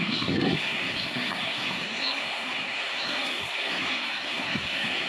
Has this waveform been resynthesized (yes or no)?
yes